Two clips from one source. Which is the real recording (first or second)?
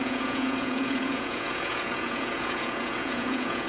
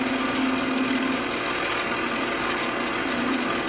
second